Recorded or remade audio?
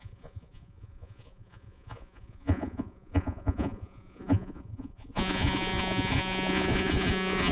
remade